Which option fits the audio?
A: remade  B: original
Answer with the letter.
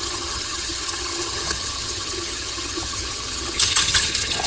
A